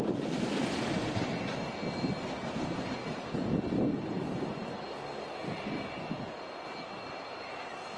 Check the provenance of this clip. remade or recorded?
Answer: recorded